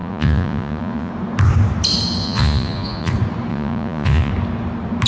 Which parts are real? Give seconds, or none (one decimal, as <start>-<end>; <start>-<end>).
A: 1.1-2.2; 3.1-3.5; 4.3-5.1